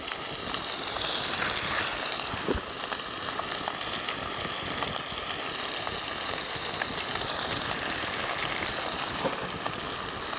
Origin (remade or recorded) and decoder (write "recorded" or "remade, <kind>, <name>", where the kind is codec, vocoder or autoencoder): recorded